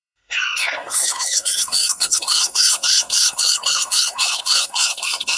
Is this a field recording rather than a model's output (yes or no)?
no